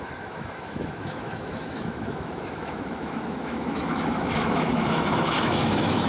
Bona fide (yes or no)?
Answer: no